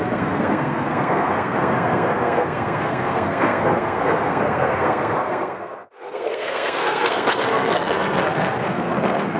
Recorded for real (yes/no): no